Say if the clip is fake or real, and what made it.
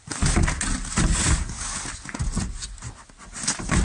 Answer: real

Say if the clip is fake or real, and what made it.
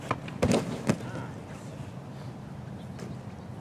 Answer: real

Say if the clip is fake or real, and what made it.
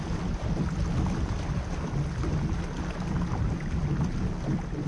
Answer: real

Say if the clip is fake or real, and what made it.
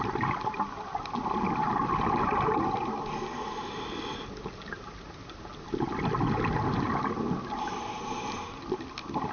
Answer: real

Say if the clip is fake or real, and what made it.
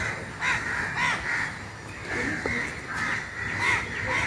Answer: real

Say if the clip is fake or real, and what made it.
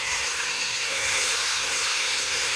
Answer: fake, codec, SNAC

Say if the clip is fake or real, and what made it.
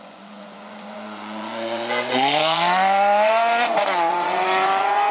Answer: fake, vocoder, Vocos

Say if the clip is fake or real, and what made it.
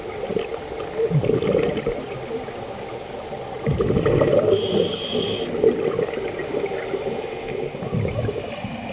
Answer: real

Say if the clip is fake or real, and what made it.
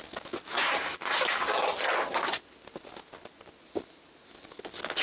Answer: real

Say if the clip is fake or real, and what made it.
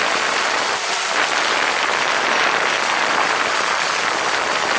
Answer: fake, vocoder, BigVGAN v2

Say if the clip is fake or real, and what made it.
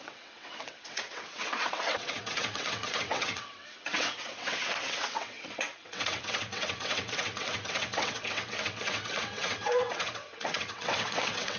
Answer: fake, vocoder, WaveNeXt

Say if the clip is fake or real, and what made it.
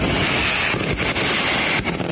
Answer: real